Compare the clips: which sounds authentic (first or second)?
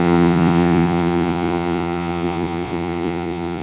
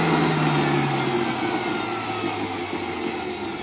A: second